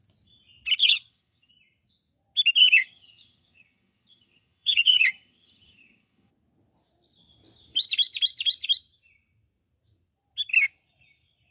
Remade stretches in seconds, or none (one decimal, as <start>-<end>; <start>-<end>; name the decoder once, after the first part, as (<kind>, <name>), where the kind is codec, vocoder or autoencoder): 0.8-1.5 (vocoder, HiFi-GAN); 2.6-6.3